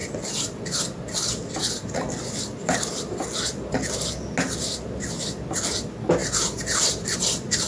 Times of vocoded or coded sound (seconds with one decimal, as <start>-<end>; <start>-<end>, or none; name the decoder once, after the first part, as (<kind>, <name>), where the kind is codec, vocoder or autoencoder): 2.6-3.1 (vocoder, BigVGAN v2); 6.2-7.2